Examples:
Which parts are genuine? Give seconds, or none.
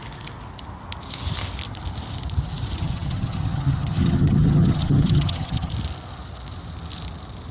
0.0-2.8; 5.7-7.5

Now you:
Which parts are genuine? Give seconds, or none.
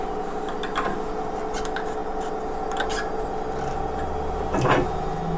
0.0-5.4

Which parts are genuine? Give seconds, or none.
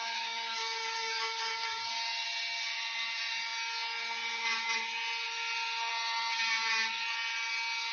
1.9-7.9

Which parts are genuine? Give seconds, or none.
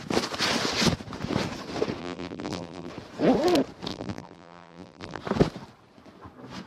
0.0-2.0; 2.9-3.9; 5.2-6.7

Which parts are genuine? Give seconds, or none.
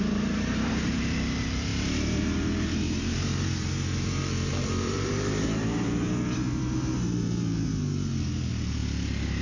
8.8-9.4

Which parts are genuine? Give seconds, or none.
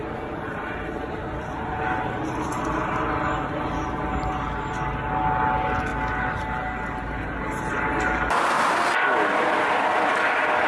0.0-10.7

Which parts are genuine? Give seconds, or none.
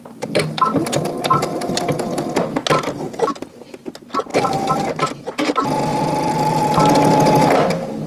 0.0-4.3; 5.0-5.9; 6.6-8.1